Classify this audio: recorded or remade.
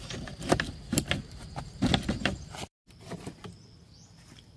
remade